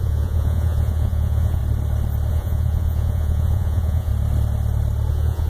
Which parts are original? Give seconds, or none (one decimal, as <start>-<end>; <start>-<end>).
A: 1.6-2.3; 4.1-5.1